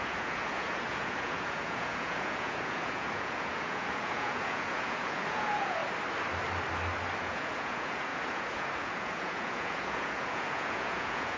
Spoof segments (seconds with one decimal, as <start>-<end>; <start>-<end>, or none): 0.0-5.8; 7.2-11.4

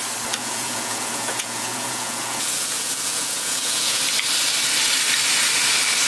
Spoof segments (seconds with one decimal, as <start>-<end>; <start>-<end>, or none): 0.4-4.0

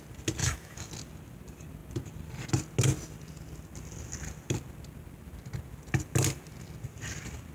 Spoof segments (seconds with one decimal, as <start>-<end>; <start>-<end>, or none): 0.4-0.9

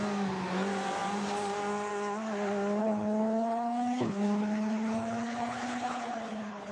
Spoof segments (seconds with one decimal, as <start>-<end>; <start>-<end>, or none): 2.8-6.7

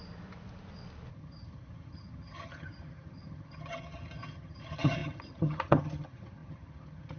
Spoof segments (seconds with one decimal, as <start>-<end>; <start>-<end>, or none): 1.1-7.2

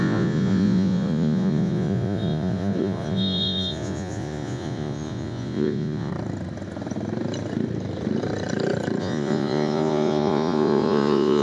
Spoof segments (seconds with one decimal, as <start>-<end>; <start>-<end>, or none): 0.0-6.1; 9.0-11.4

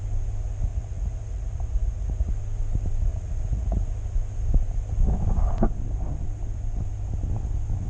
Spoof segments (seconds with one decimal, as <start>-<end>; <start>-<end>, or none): 0.7-2.3; 3.1-3.9